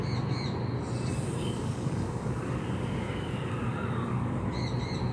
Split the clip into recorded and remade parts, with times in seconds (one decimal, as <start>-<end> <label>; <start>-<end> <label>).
0.0-1.4 recorded; 1.4-4.5 remade; 4.5-5.1 recorded

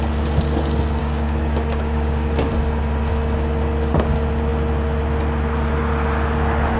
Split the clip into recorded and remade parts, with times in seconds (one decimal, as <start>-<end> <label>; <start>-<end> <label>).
0.0-1.0 recorded; 1.0-2.5 remade; 2.5-6.8 recorded

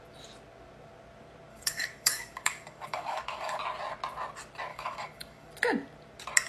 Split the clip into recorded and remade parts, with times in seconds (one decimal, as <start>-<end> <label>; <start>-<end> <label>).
0.0-1.5 recorded; 1.5-3.6 remade; 3.6-4.7 recorded; 4.7-5.5 remade; 5.5-6.5 recorded

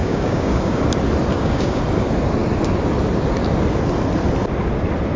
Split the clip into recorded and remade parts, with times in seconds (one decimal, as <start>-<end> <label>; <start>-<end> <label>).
0.0-0.8 remade; 0.8-1.3 recorded; 1.3-1.8 remade; 1.8-5.2 recorded

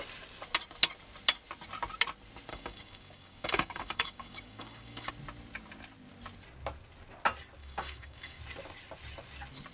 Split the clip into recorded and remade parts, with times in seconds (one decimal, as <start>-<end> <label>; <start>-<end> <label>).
0.0-2.5 recorded; 2.5-5.1 remade; 5.1-7.6 recorded; 7.6-8.4 remade; 8.4-9.7 recorded

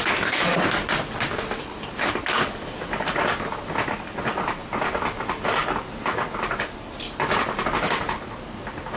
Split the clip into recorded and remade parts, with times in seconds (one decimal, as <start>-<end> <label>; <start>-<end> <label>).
0.0-9.0 recorded

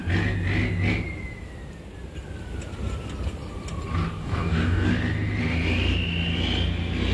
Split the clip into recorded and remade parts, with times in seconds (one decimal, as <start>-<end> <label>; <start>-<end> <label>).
0.0-4.2 recorded; 4.2-4.9 remade; 4.9-7.1 recorded